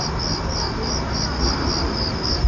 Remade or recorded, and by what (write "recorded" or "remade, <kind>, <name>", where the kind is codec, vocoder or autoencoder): recorded